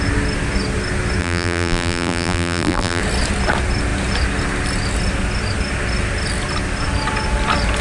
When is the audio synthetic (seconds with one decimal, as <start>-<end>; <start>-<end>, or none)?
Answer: 1.2-3.0